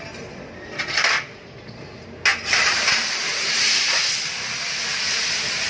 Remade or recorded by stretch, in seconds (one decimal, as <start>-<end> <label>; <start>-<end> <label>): 0.0-2.3 recorded; 2.3-3.8 remade; 3.8-5.7 recorded